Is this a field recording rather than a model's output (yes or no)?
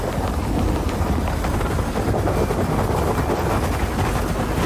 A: yes